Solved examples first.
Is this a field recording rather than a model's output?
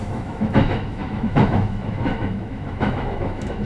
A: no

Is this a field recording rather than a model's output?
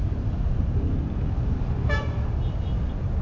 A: yes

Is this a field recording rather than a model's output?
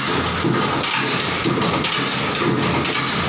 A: yes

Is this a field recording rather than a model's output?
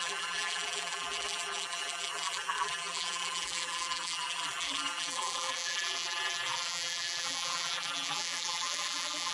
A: no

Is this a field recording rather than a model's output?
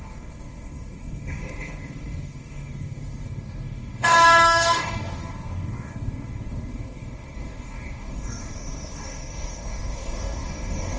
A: no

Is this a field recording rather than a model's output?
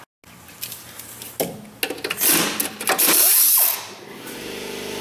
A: yes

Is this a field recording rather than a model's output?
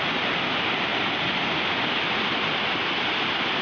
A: yes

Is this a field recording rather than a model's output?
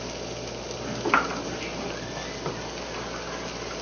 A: yes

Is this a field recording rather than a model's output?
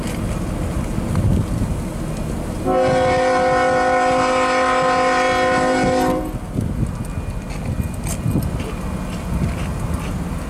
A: yes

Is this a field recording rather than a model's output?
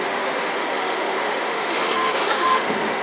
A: no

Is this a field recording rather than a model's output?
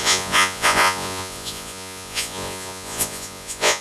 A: no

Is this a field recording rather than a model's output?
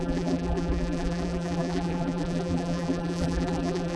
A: no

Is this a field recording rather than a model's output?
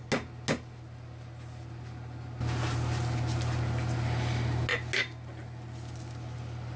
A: yes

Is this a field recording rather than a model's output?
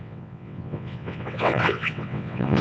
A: no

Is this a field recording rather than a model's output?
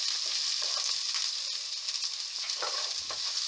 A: yes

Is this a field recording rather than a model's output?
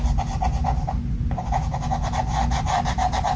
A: yes